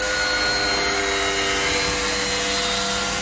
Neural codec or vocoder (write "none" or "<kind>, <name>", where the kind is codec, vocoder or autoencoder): none